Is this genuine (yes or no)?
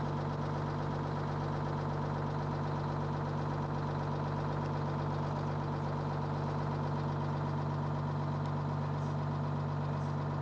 yes